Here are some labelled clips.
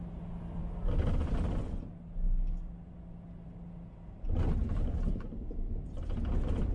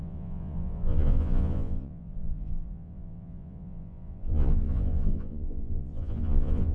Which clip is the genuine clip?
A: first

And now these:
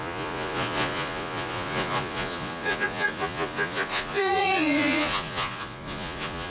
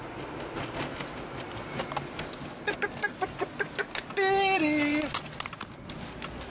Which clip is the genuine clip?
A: second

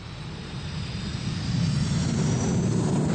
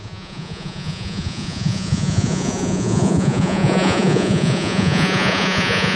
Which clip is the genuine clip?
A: first